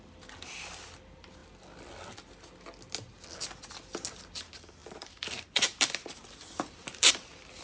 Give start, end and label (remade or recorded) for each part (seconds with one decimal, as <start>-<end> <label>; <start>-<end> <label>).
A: 0.0-4.8 recorded; 4.8-7.1 remade; 7.1-7.6 recorded